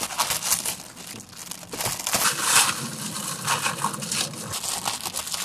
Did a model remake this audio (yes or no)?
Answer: no